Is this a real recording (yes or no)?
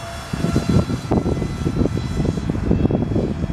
yes